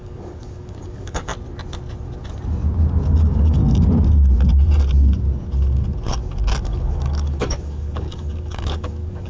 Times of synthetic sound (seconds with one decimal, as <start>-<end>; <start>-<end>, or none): 0.0-1.3; 3.1-3.6; 6.6-9.3